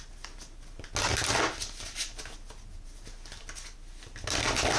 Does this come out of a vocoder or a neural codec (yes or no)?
no